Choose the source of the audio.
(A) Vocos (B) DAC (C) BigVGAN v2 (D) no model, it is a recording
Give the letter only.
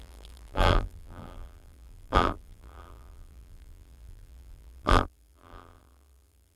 C